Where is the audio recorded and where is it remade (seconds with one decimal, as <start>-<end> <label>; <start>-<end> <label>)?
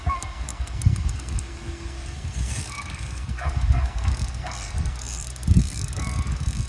0.0-6.7 remade